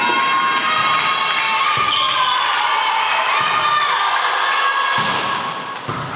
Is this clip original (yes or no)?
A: yes